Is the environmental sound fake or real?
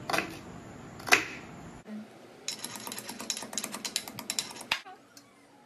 real